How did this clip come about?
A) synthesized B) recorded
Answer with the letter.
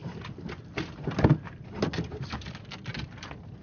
B